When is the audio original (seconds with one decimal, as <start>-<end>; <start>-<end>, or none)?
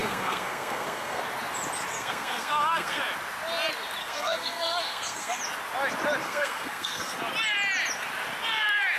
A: 1.2-1.9; 3.0-4.0; 5.4-6.2; 7.1-9.0